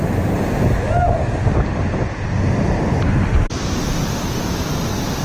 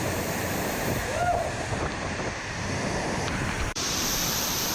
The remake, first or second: second